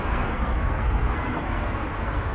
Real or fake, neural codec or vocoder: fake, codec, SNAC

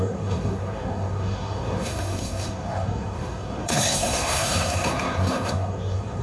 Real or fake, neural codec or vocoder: fake, codec, SNAC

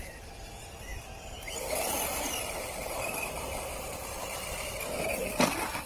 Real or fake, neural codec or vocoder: real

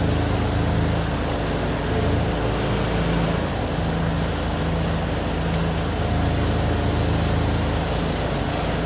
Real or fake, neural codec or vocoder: real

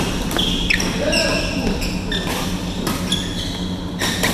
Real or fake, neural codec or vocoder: real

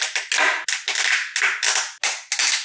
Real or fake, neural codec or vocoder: real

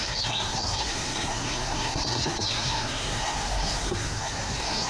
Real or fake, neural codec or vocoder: fake, codec, SNAC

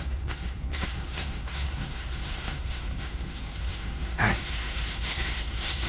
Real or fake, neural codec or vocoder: fake, codec, SNAC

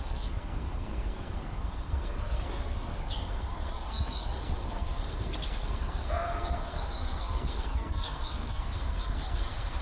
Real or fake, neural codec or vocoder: fake, codec, SNAC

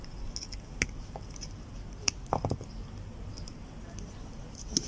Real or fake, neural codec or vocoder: real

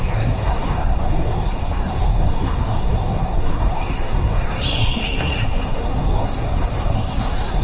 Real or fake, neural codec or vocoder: fake, codec, SNAC